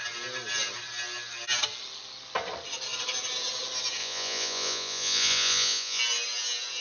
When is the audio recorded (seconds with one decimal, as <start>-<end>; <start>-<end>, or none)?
0.0-4.0; 6.0-6.8